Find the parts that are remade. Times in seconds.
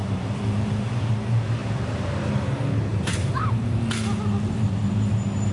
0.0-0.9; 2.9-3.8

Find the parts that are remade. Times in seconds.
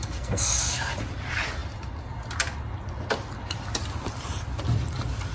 0.0-0.9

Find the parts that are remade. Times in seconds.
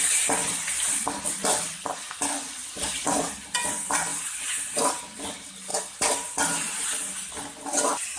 2.6-3.2; 4.1-5.0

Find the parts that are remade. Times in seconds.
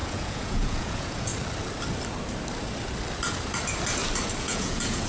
0.0-1.3; 4.4-5.1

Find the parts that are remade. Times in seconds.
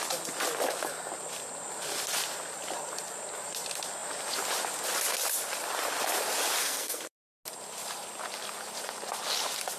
6.6-7.2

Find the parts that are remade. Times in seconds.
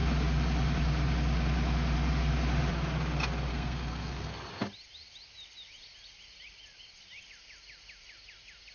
3.5-4.3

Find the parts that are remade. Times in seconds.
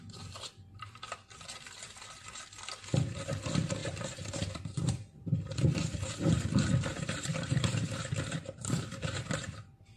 3.8-6.3; 6.9-9.4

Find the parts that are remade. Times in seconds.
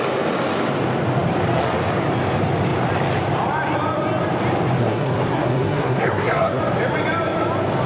4.8-6.6